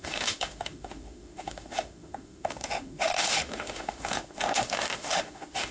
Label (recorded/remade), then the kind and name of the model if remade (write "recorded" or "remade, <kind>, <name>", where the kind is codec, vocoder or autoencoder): remade, autoencoder, DAC-VAE